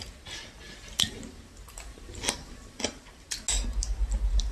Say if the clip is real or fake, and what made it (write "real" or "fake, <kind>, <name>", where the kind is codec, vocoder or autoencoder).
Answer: real